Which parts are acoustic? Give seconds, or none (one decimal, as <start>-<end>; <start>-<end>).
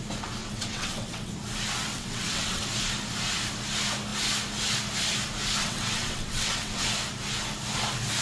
0.0-0.4; 1.3-1.9; 2.6-5.6; 6.8-8.2